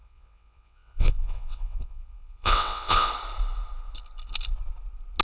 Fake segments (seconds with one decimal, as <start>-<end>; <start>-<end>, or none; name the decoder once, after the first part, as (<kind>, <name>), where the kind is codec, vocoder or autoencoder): 0.0-3.1 (vocoder, WaveNeXt)